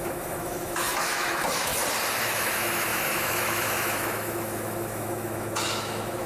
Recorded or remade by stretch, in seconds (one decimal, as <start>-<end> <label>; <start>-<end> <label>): 0.0-1.7 remade; 1.7-2.2 recorded; 2.2-6.3 remade